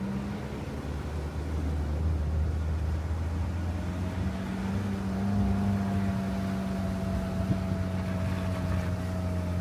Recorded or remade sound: recorded